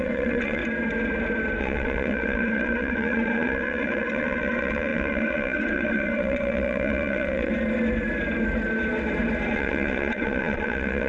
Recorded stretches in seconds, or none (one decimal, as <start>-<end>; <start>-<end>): 0.6-1.6; 7.5-9.5